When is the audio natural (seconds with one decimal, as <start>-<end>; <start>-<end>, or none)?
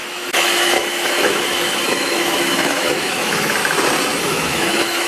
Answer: 3.6-4.2